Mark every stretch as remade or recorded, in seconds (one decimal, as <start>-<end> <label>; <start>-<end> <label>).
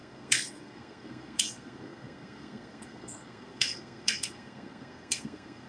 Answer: 0.0-5.7 remade